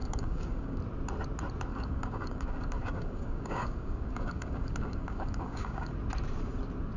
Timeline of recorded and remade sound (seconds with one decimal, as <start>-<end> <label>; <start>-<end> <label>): 0.0-0.8 remade; 0.8-1.7 recorded; 1.7-5.9 remade; 5.9-7.0 recorded